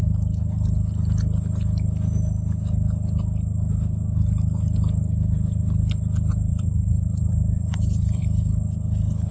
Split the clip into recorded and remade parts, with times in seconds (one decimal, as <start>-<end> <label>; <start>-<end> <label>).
0.0-6.5 recorded; 6.5-8.2 remade; 8.2-9.3 recorded